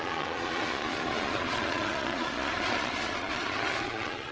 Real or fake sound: fake